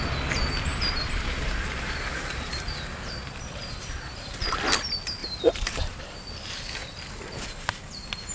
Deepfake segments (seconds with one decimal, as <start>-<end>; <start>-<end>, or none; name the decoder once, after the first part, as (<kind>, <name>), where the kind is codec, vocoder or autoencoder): 0.7-4.6 (vocoder, BigVGAN v2); 5.2-6.0